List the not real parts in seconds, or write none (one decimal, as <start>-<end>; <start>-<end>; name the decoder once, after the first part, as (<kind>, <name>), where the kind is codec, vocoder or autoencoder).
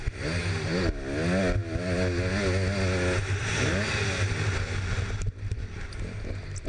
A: none